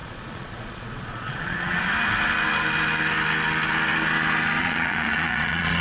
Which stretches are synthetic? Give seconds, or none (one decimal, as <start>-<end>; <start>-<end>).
0.0-1.9; 4.6-5.8